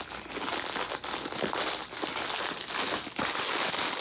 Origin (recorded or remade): recorded